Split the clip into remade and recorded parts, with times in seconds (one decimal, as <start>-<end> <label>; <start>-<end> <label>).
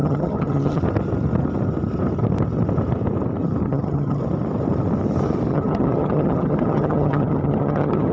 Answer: 0.0-0.8 remade; 0.8-3.6 recorded; 3.6-4.2 remade; 4.2-5.5 recorded; 5.5-8.1 remade